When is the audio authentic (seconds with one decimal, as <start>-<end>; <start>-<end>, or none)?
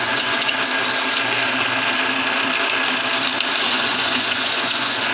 0.5-3.6